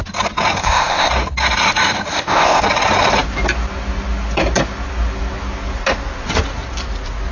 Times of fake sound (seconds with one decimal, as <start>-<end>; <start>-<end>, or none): 0.6-1.1; 2.1-2.6